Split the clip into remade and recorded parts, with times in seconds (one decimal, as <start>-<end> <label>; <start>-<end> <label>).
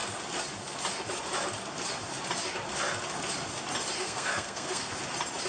0.0-4.0 recorded; 4.0-4.9 remade; 4.9-5.5 recorded